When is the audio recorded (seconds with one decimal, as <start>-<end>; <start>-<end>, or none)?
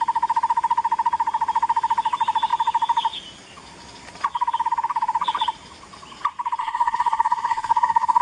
0.0-6.6